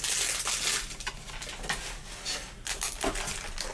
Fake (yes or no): no